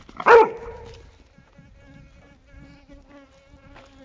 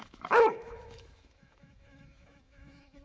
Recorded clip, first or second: first